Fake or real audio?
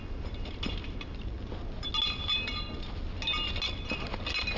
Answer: real